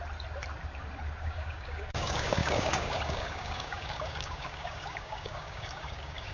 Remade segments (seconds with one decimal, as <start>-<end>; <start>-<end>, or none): 1.2-6.3